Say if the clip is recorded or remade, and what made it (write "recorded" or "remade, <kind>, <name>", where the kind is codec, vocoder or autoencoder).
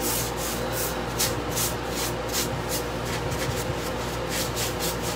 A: recorded